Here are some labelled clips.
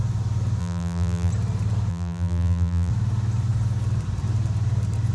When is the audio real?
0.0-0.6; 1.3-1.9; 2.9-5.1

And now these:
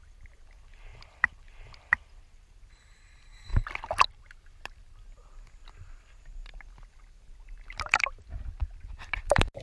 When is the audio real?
0.0-0.9; 1.8-3.5; 6.7-8.6; 9.2-9.6

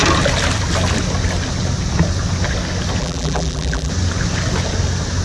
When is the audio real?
0.0-3.0; 3.9-5.2

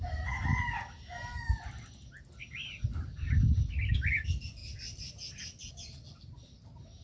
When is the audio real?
0.0-7.0

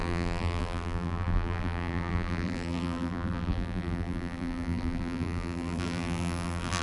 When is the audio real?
none

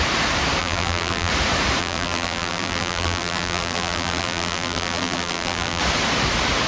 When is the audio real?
0.0-0.6; 1.3-1.8; 5.8-6.7

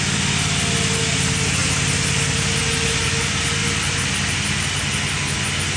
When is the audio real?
0.0-5.8

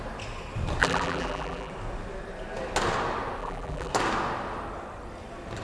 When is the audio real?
0.0-0.8; 1.7-3.4; 3.9-5.6